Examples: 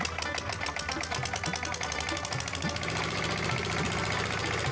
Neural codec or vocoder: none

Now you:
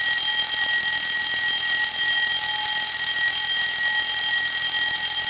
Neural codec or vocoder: none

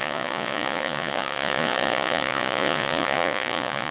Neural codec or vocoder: vocoder, Vocos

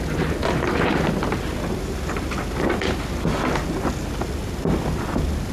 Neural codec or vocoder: none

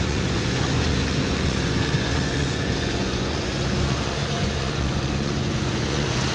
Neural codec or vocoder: vocoder, Vocos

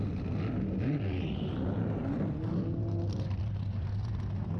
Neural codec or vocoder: none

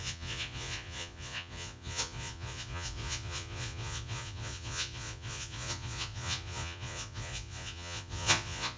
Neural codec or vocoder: vocoder, Vocos